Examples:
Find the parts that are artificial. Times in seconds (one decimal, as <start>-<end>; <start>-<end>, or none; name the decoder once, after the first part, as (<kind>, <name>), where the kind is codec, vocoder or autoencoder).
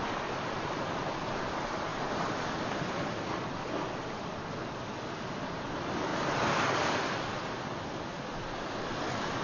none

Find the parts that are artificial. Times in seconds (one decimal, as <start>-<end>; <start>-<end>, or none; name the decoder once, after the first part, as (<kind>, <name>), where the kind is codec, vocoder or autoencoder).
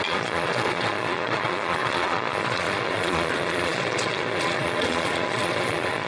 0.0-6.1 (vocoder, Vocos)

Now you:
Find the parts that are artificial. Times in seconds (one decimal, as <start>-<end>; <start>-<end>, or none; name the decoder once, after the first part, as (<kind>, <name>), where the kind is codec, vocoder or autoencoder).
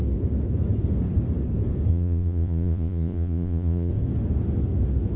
1.9-3.9 (vocoder, Vocos)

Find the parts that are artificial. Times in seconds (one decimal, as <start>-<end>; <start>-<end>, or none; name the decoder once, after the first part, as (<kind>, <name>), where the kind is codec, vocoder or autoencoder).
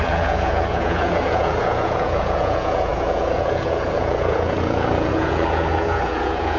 0.0-6.6 (vocoder, Vocos)